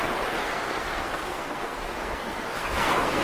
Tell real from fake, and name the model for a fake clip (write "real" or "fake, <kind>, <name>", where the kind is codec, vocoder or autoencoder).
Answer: fake, codec, SNAC